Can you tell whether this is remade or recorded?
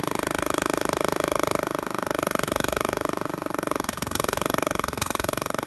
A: remade